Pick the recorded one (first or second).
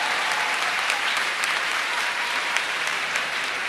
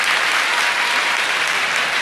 second